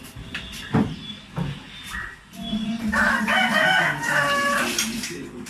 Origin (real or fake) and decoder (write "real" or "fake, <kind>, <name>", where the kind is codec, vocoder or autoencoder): real